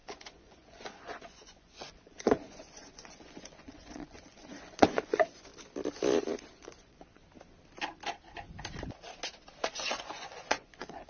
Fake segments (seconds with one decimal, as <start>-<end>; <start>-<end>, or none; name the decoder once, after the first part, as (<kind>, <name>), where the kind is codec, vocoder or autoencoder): 0.0-5.5 (vocoder, Vocos); 6.5-7.2; 9.6-11.1